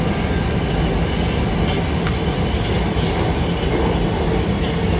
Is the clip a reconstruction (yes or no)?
no